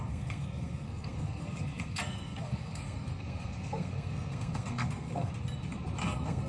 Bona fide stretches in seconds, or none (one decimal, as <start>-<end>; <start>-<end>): 5.3-6.0